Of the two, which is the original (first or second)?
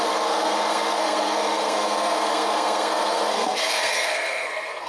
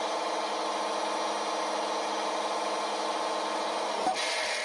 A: second